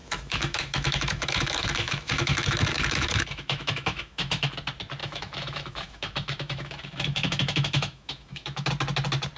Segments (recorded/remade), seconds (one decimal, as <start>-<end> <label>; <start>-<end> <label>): 0.0-4.5 remade; 4.5-5.0 recorded; 5.0-8.7 remade; 8.7-9.4 recorded